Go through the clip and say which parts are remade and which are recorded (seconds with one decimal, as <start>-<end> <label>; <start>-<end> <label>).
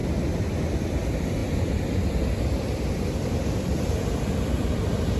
0.0-5.2 recorded